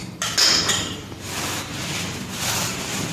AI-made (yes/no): no